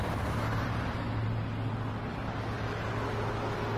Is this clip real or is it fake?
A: fake